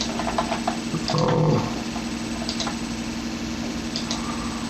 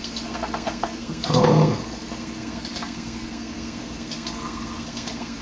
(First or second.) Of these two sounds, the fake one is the second